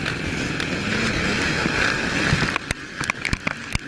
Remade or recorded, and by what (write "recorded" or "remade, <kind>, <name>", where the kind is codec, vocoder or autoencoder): recorded